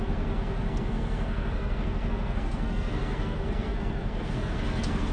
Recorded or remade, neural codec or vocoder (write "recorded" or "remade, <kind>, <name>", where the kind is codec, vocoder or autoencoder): remade, codec, SNAC